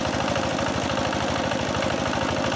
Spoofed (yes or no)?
no